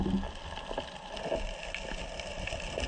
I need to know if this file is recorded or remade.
recorded